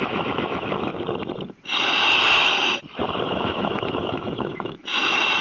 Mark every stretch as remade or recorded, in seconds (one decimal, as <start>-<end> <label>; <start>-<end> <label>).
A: 0.0-0.9 remade; 0.9-3.2 recorded; 3.2-5.4 remade